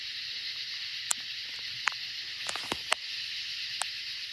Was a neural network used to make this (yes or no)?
no